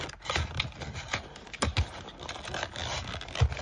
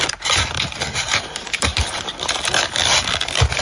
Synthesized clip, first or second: second